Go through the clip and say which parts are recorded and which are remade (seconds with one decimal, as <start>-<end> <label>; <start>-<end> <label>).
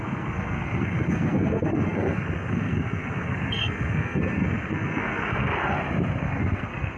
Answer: 0.0-5.5 remade; 5.5-6.2 recorded; 6.2-7.0 remade